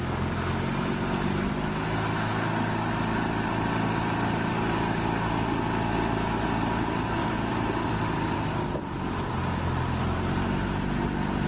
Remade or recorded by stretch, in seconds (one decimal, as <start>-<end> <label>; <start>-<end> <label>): 0.0-7.2 recorded; 7.2-9.3 remade; 9.3-11.5 recorded